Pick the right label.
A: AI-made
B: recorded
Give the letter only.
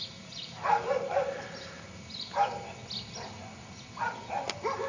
B